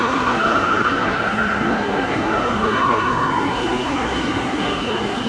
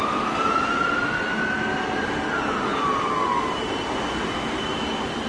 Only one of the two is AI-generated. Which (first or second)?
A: first